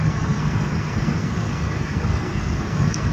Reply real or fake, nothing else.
fake